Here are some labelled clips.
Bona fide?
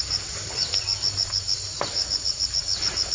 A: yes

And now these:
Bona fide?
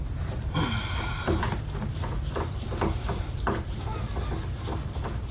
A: yes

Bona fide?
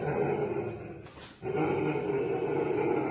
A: yes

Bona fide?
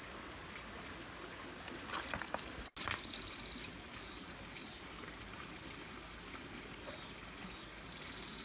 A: yes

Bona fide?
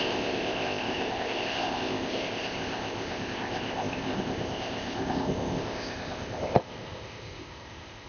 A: no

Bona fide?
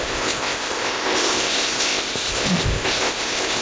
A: no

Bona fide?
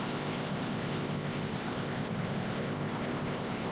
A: no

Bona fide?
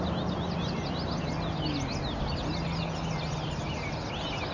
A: yes